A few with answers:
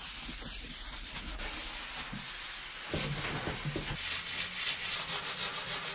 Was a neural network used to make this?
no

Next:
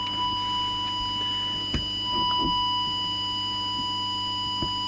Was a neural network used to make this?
no